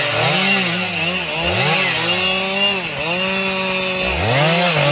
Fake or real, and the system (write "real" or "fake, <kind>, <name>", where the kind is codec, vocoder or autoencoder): real